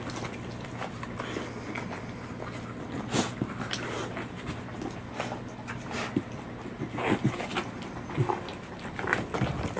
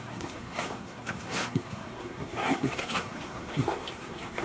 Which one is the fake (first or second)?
second